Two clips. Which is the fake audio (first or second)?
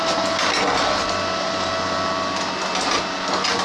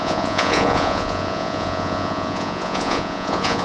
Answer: second